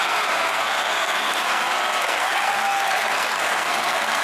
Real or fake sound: fake